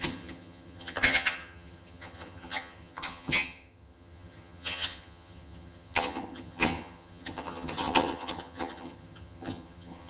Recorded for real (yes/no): no